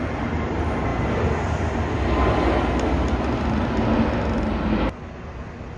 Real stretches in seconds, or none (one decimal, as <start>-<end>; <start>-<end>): 0.0-5.8